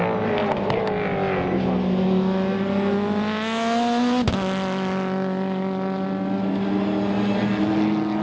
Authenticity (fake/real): real